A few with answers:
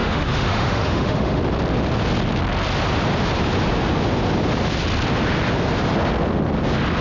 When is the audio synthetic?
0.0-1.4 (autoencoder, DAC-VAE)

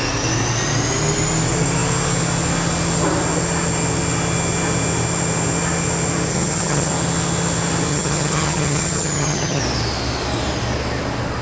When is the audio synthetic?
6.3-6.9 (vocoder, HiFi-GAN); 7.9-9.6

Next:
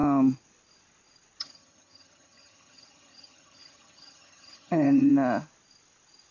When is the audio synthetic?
1.4-5.1 (vocoder, HiFi-GAN)

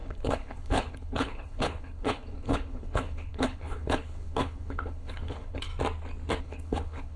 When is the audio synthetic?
0.0-5.7 (codec, HILCodec); 6.4-7.2

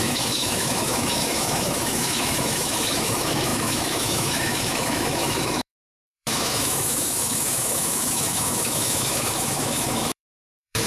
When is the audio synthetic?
0.0-10.9 (autoencoder, DAC-VAE)

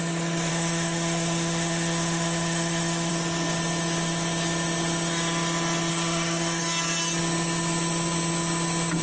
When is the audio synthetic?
0.5-3.1 (autoencoder, DAC-VAE); 5.9-6.6

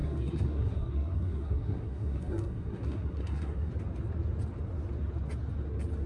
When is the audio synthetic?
0.0-3.7 (codec, SNAC)